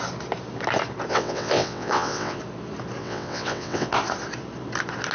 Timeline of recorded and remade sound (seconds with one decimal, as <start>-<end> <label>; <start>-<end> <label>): 0.0-1.1 recorded; 1.1-2.4 remade; 2.4-3.0 recorded; 3.0-3.9 remade; 3.9-5.1 recorded